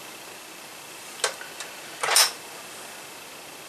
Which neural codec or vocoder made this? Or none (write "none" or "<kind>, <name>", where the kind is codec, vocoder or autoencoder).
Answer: none